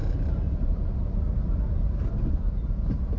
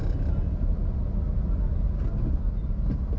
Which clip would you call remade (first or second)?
first